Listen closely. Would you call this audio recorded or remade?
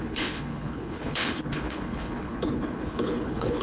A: remade